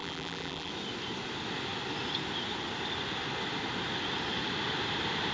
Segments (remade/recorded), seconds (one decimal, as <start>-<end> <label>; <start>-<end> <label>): 0.0-0.7 remade; 0.7-5.3 recorded